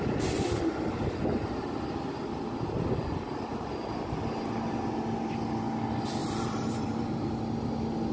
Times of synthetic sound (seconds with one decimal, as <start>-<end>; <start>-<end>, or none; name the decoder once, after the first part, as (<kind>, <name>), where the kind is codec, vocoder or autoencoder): 3.5-4.0 (vocoder, BigVGAN v2); 6.2-7.4